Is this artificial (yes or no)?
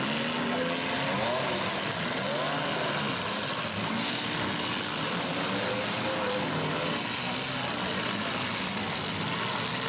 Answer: no